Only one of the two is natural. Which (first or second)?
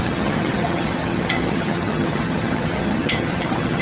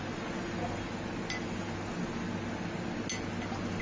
second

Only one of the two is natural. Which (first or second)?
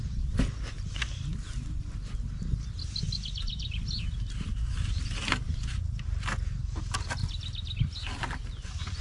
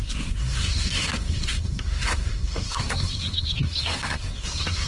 first